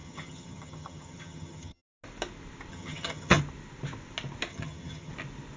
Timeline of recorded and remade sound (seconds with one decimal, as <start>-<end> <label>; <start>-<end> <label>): 0.0-1.8 remade; 1.8-2.7 recorded; 2.7-3.4 remade; 3.4-4.5 recorded; 4.5-5.1 remade; 5.1-5.6 recorded